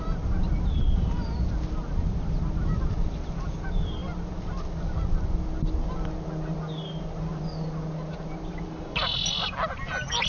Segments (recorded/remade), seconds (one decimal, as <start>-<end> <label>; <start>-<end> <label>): 0.0-10.3 recorded